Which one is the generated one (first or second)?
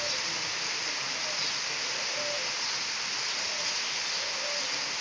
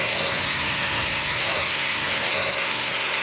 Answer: second